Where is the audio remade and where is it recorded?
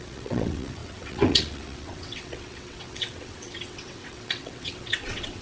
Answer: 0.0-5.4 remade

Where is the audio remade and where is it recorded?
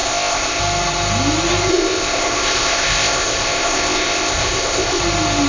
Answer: 0.0-0.6 remade; 0.6-1.7 recorded; 1.7-5.0 remade; 5.0-5.5 recorded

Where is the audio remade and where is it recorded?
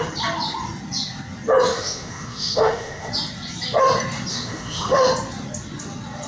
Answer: 0.0-1.7 recorded; 1.7-3.1 remade; 3.1-4.3 recorded; 4.3-5.1 remade; 5.1-6.3 recorded